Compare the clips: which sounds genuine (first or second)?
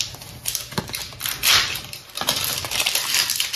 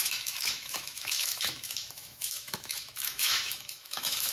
first